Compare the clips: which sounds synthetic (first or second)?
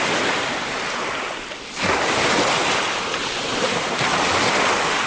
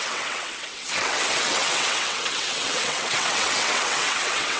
second